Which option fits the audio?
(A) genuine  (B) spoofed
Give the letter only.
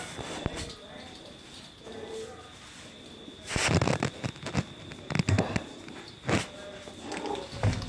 A